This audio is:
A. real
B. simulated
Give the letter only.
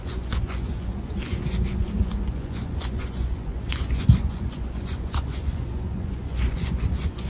B